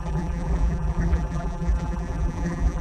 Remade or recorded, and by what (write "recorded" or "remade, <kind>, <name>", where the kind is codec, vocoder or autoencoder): remade, vocoder, BigVGAN v2